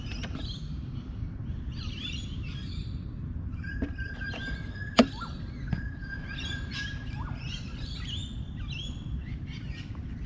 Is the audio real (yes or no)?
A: no